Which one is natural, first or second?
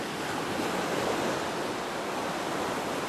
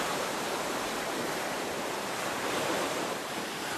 first